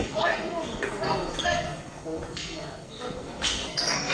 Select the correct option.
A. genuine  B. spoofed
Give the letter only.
B